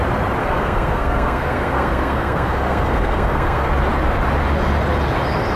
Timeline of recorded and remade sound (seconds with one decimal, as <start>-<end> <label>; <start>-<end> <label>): 0.0-0.4 recorded; 0.4-3.7 remade; 3.7-5.6 recorded